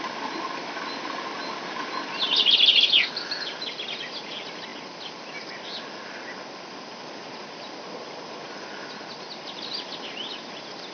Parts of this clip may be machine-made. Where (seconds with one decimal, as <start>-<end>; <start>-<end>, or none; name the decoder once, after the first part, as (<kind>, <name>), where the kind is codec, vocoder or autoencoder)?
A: none